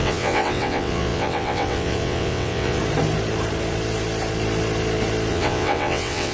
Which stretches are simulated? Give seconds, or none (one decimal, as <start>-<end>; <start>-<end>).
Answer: 0.0-2.8; 5.3-6.3